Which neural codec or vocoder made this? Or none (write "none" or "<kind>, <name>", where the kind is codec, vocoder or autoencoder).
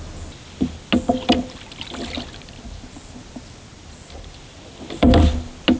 none